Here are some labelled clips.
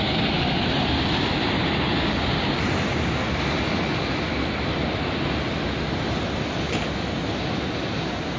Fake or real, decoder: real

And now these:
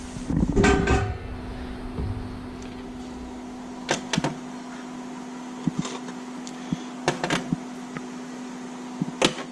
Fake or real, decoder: real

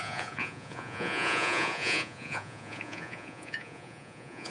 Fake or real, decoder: fake, vocoder, Vocos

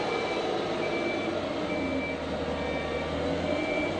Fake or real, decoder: real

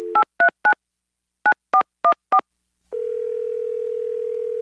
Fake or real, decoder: real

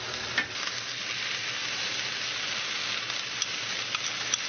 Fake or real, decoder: real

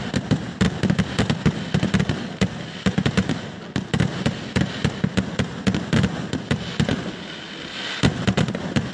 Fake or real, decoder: real